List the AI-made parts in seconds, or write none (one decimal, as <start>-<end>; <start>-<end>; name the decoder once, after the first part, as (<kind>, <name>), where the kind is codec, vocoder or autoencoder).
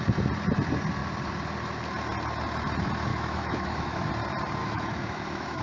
3.1-4.1 (autoencoder, DAC-VAE); 4.6-5.6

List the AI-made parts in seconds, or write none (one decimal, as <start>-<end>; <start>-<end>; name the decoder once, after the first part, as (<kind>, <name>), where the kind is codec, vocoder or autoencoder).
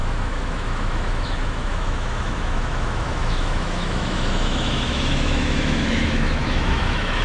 0.0-7.2 (autoencoder, DAC-VAE)